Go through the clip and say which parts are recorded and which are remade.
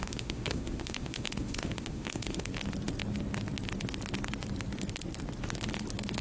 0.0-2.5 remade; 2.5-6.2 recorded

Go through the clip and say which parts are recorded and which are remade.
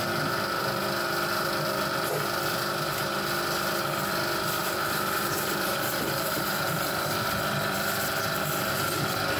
0.0-4.6 recorded; 4.6-8.4 remade; 8.4-9.4 recorded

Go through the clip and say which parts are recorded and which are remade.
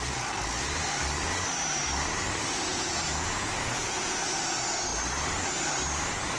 0.0-2.7 recorded; 2.7-4.2 remade; 4.2-6.4 recorded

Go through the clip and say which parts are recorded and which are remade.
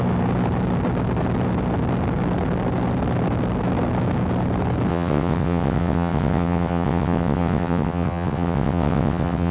0.0-4.9 recorded; 4.9-9.5 remade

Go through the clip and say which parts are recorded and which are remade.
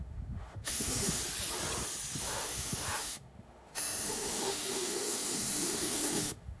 0.0-1.2 remade; 1.2-2.2 recorded; 2.2-6.6 remade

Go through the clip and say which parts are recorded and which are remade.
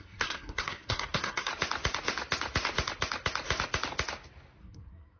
0.0-1.5 remade; 1.5-4.6 recorded; 4.6-5.2 remade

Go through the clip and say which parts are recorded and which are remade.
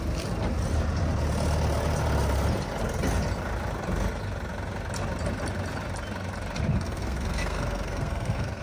0.0-6.7 recorded; 6.7-8.6 remade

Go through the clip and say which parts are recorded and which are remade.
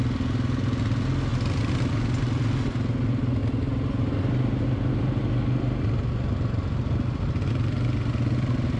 0.0-8.8 recorded